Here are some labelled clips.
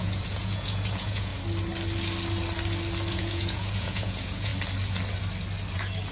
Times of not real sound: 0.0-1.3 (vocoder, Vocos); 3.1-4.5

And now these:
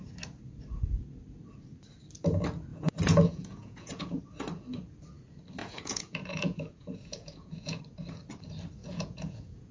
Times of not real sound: 2.7-4.2 (vocoder, Vocos); 5.6-7.8; 8.8-9.7

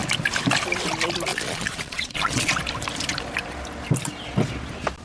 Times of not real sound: 1.3-2.5 (vocoder, Vocos)

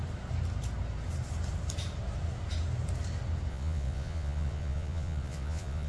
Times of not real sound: 3.5-5.9 (vocoder, Vocos)

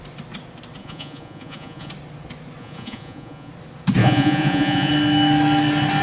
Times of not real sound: 0.8-1.9 (vocoder, Vocos); 2.6-3.5; 4.0-4.9

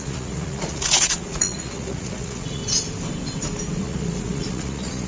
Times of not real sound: 0.0-2.6 (vocoder, Vocos); 3.8-5.1